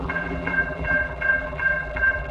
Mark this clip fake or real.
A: fake